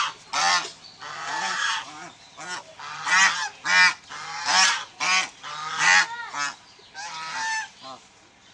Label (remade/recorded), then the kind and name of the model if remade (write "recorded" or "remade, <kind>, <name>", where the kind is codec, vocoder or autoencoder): recorded